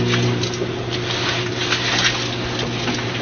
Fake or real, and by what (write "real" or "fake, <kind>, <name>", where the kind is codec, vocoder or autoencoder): real